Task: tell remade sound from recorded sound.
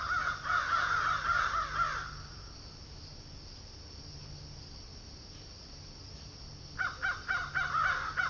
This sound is recorded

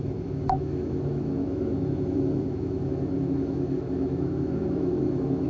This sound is remade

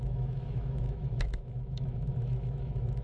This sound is remade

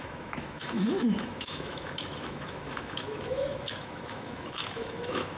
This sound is remade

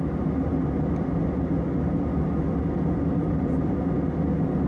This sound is recorded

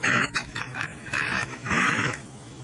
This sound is remade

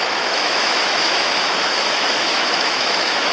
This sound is remade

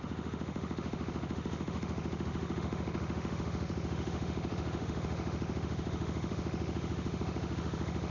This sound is remade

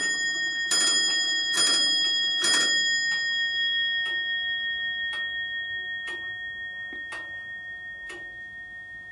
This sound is recorded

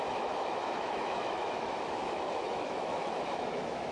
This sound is remade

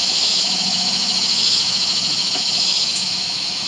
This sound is remade